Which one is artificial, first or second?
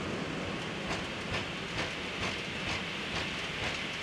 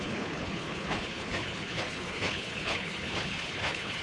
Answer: second